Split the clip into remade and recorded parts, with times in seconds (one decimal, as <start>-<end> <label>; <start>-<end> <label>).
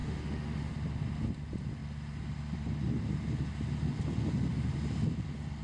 0.0-0.7 remade; 0.7-5.6 recorded